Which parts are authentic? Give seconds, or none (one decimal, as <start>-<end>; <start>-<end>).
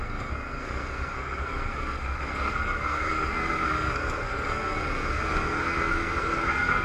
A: none